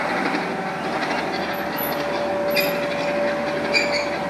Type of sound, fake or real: real